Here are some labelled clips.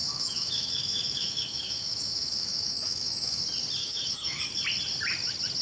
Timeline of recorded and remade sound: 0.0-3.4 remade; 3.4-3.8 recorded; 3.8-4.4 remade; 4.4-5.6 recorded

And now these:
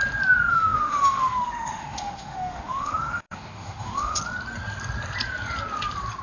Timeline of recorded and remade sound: 0.0-0.5 recorded; 0.5-4.2 remade; 4.2-6.2 recorded

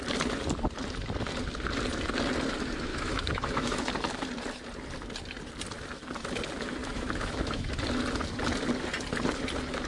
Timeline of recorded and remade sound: 0.0-2.9 recorded; 2.9-3.9 remade; 3.9-6.8 recorded; 6.8-7.7 remade; 7.7-9.9 recorded

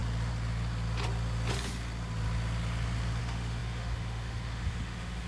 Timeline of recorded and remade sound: 0.0-3.2 recorded; 3.2-5.3 remade

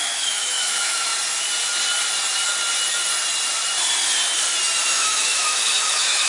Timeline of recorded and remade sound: 0.0-1.1 remade; 1.1-4.9 recorded; 4.9-6.3 remade